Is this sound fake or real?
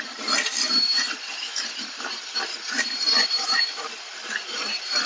fake